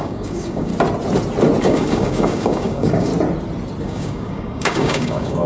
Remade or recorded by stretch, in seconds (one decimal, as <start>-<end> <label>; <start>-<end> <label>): 0.0-0.7 remade; 0.7-1.6 recorded; 1.6-3.1 remade; 3.1-3.8 recorded; 3.8-5.5 remade